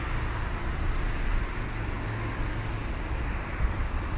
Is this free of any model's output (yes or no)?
yes